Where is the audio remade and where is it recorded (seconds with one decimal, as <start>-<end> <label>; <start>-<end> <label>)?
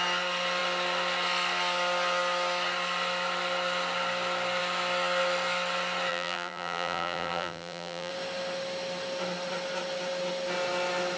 0.0-6.1 recorded; 6.1-8.1 remade; 8.1-11.2 recorded